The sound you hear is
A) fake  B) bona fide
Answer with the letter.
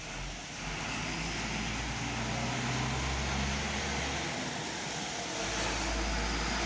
B